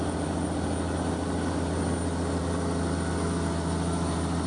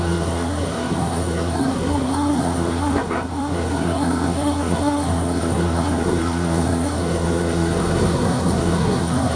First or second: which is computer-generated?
second